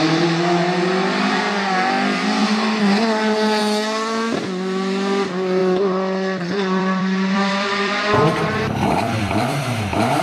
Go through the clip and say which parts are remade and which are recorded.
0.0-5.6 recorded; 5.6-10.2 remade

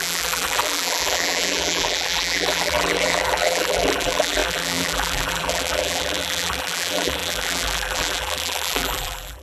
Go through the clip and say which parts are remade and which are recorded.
0.0-9.4 remade

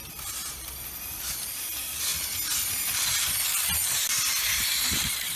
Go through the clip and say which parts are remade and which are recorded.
0.0-0.4 remade; 0.4-1.5 recorded; 1.5-2.1 remade; 2.1-4.9 recorded; 4.9-5.4 remade

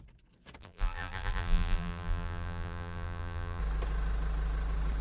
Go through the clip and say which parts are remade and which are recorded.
0.0-0.6 recorded; 0.6-3.6 remade; 3.6-5.0 recorded

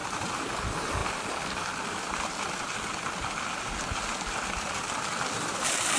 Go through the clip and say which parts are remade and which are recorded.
0.0-6.0 recorded

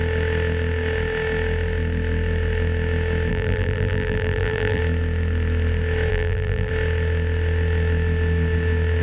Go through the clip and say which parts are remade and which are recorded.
0.0-3.3 recorded; 3.3-4.8 remade; 4.8-6.1 recorded; 6.1-6.7 remade; 6.7-9.0 recorded